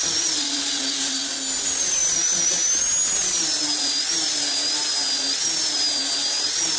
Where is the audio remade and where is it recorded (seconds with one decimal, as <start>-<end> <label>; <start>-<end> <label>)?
0.0-6.8 recorded